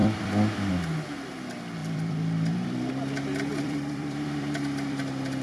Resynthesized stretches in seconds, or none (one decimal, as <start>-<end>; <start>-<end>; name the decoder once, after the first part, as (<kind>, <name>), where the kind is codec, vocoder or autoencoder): 0.0-0.7 (vocoder, BigVGAN v2); 1.8-2.9; 3.5-5.0